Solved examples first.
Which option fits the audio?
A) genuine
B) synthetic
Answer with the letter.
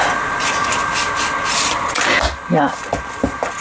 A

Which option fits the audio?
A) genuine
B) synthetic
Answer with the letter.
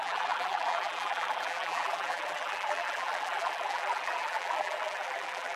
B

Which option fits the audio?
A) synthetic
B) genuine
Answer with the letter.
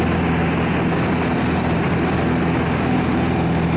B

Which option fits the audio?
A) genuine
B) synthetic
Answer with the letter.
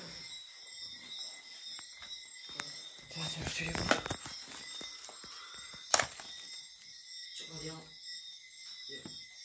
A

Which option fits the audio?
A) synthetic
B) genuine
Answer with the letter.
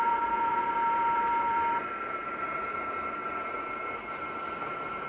A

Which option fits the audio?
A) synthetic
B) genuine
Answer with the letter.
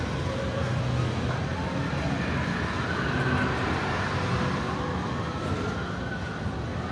B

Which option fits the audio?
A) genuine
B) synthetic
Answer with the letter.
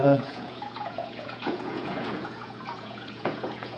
B